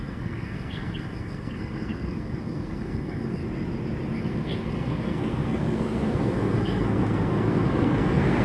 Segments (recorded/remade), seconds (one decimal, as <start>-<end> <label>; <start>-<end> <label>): 0.0-3.4 remade; 3.4-4.2 recorded; 4.2-8.4 remade